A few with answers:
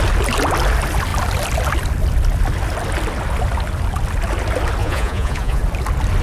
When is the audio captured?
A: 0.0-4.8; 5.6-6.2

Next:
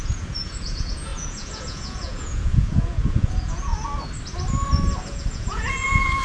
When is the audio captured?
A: 3.7-5.1

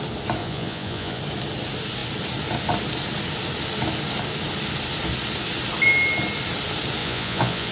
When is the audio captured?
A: 0.0-0.4; 1.2-7.0

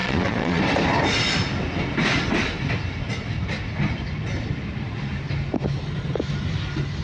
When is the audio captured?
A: 0.6-7.0

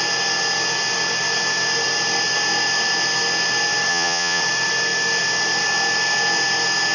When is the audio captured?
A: 0.0-3.9; 4.4-6.9

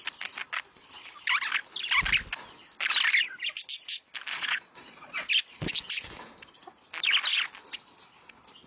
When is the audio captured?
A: 0.0-4.3; 5.3-8.7

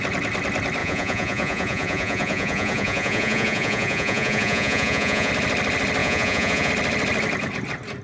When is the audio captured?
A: 0.0-0.8; 5.3-6.0; 6.7-8.0

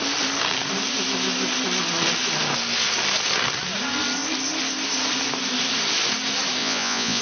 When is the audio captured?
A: 0.0-6.6